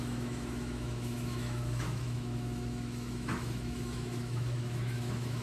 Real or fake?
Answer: fake